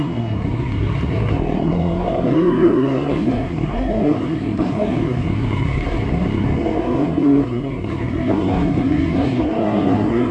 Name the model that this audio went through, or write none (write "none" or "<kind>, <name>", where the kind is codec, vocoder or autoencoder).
codec, SNAC